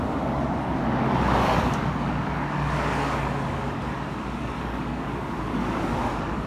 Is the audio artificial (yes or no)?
yes